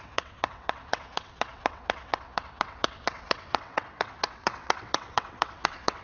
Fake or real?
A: fake